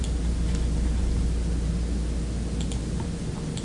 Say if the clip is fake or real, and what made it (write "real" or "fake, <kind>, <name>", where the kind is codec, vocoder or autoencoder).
real